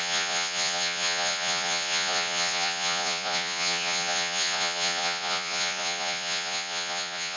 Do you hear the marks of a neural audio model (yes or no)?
yes